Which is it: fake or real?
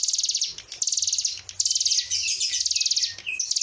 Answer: real